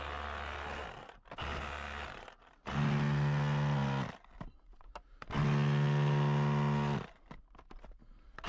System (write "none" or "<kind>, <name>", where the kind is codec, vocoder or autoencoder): none